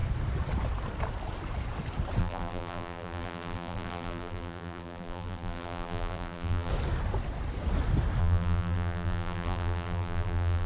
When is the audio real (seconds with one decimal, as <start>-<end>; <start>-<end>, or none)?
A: 0.0-2.2; 6.7-8.2